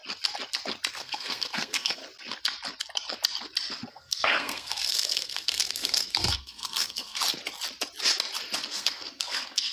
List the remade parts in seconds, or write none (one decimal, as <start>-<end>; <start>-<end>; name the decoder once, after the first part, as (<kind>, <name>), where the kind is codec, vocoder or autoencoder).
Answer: 0.9-2.0 (codec, SNAC); 3.9-7.2; 8.7-9.7